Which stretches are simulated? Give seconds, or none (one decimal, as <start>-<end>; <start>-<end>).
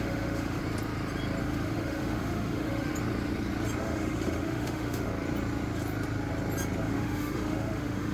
0.0-0.6; 1.4-2.9; 3.8-5.1; 6.8-8.1